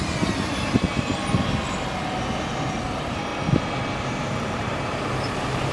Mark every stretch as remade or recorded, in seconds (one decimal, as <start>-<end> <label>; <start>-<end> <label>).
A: 0.0-1.1 remade; 1.1-2.8 recorded; 2.8-3.3 remade; 3.3-4.0 recorded; 4.0-5.7 remade